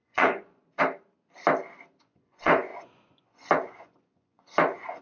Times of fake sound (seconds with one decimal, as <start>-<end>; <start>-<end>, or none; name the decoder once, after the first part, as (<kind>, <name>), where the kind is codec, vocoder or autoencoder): 0.0-0.6 (vocoder, Vocos); 2.0-5.0